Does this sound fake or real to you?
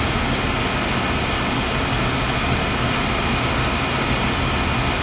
real